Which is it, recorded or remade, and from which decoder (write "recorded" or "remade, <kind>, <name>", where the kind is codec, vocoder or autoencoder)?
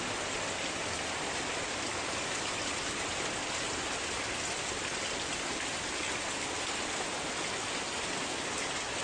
recorded